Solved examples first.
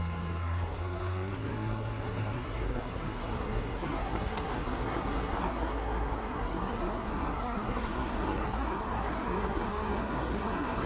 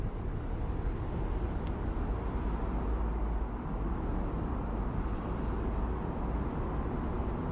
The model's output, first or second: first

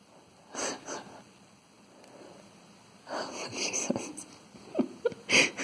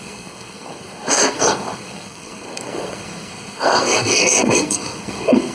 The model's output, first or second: second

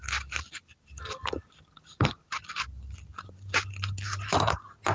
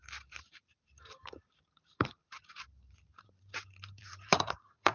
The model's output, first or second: second